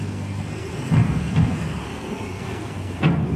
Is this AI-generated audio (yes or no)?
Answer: yes